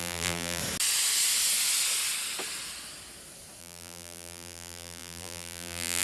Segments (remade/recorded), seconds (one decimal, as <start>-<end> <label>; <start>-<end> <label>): 0.0-0.6 remade; 0.6-3.6 recorded; 3.6-6.0 remade